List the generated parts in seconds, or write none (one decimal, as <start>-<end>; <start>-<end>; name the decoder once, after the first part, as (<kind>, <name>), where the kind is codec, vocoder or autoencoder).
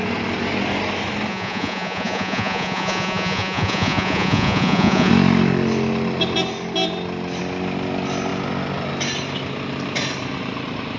1.3-5.1 (vocoder, Vocos)